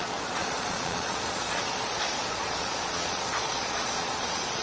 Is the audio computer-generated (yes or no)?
yes